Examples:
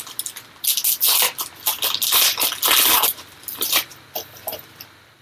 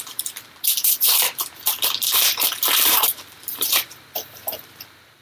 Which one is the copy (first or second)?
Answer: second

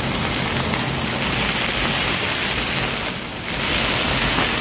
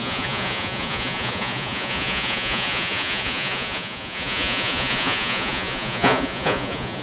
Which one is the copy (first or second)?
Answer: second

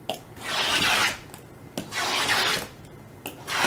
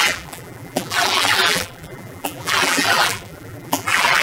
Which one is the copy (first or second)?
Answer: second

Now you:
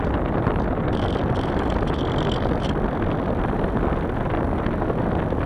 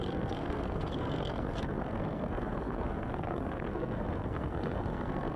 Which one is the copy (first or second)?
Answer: second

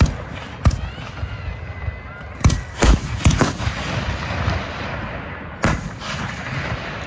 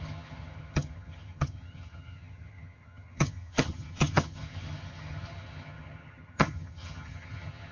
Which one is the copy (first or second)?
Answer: second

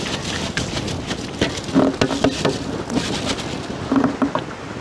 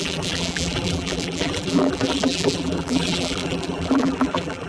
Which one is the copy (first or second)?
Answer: second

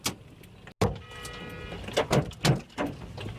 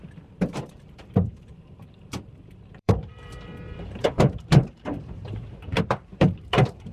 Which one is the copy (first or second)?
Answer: second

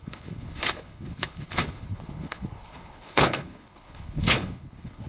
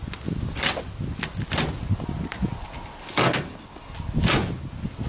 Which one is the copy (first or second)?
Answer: first